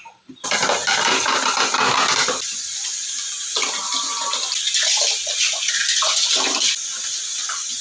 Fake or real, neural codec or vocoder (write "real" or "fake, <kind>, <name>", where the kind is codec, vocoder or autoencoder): real